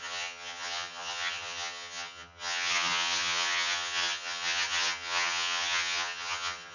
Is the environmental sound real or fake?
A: fake